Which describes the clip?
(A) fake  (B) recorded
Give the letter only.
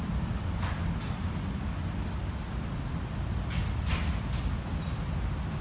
B